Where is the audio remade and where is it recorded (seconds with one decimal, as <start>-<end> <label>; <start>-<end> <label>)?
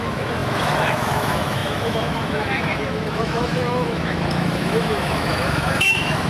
0.0-6.3 remade